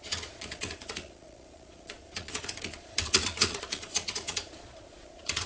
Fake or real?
fake